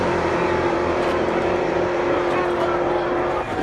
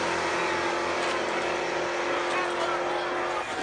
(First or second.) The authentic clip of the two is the second